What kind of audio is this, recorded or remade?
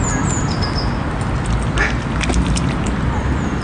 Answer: recorded